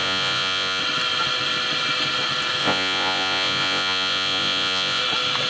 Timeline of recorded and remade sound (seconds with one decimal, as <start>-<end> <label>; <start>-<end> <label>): 0.0-0.8 remade; 0.8-2.6 recorded; 2.6-5.0 remade; 5.0-5.5 recorded